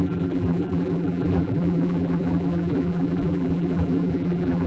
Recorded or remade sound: remade